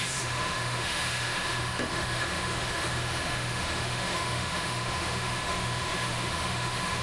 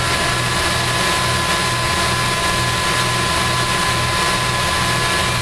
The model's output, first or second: first